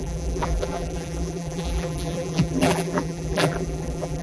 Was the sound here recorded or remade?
remade